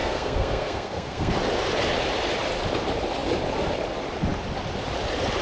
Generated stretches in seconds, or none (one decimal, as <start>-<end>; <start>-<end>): 0.0-1.3